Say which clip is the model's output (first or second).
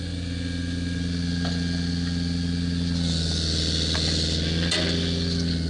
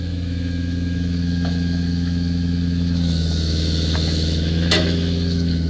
second